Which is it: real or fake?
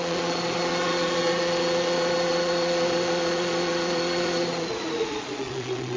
fake